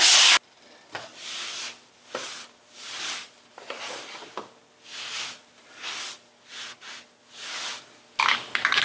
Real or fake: real